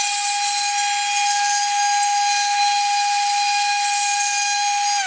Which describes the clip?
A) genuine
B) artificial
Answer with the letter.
A